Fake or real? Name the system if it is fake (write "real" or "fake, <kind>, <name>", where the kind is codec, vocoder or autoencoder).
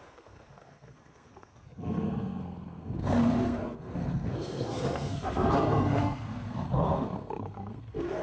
fake, codec, SNAC